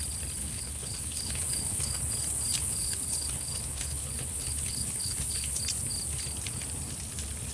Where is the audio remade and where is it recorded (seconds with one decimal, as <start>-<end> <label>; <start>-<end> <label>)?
0.0-0.4 recorded; 0.4-2.0 remade; 2.0-2.5 recorded; 2.5-5.6 remade; 5.6-7.5 recorded